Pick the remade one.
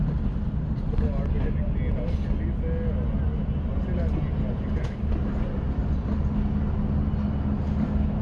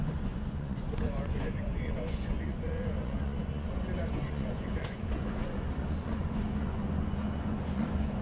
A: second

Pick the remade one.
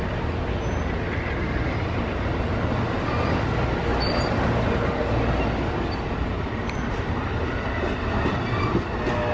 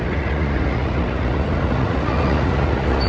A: second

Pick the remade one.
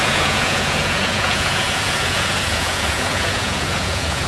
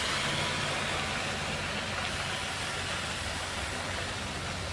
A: first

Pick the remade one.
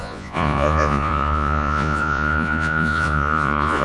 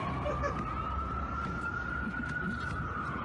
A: first